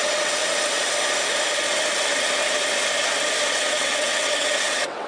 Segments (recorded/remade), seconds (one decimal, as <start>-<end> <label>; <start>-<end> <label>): 0.0-0.4 remade; 0.4-3.5 recorded; 3.5-5.1 remade